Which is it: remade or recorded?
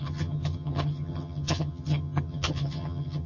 remade